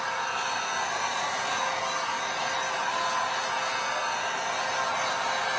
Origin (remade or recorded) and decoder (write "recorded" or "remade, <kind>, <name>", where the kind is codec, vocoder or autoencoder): recorded